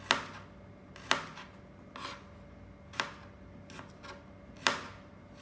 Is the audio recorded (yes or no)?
yes